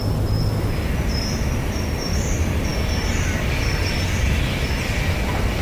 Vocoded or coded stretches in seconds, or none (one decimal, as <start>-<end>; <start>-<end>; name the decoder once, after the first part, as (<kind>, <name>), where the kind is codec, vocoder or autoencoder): none